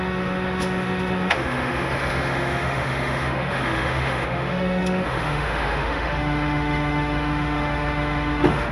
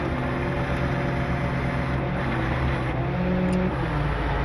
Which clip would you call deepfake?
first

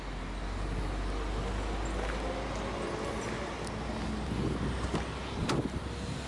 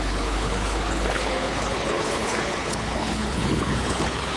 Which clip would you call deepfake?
second